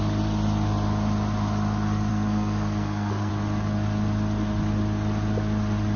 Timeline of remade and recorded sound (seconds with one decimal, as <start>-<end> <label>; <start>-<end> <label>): 0.0-2.1 recorded; 2.1-3.3 remade; 3.3-6.0 recorded